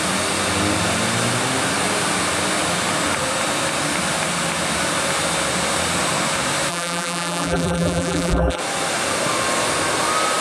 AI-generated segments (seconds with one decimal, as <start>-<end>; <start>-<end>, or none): 6.7-8.6

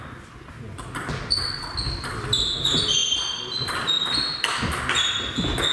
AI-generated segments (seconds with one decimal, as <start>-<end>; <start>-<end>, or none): 3.0-4.0

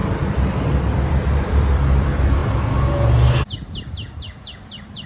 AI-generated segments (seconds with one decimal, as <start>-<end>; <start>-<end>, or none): 0.0-2.4; 3.9-5.1

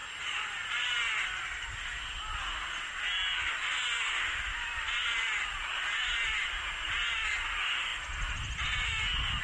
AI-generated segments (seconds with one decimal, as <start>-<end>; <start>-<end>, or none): 0.0-0.9

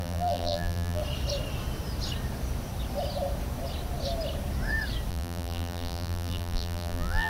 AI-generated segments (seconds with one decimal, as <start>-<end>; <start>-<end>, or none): 0.0-1.0; 5.1-7.3

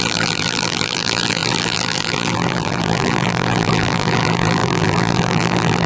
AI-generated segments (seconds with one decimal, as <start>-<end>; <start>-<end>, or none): 0.0-5.9

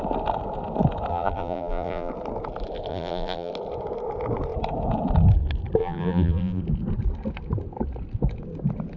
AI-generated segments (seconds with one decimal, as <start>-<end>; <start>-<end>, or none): 1.1-2.1; 2.9-3.5; 5.8-6.6